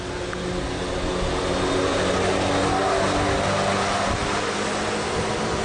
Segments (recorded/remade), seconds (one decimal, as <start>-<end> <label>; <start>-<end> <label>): 0.0-5.6 recorded